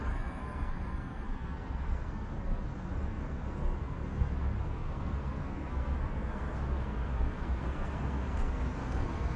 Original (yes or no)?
no